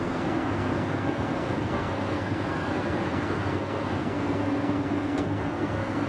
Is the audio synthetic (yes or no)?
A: yes